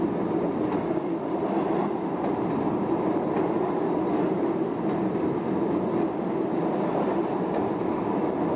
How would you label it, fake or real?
real